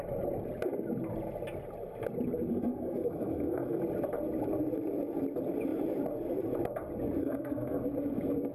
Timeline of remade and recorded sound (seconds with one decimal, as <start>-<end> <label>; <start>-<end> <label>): 0.0-2.5 recorded; 2.5-3.8 remade; 3.8-7.2 recorded; 7.2-7.8 remade; 7.8-8.5 recorded